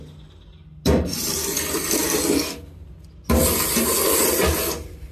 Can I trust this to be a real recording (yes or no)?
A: yes